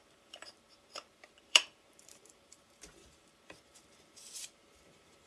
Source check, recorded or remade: remade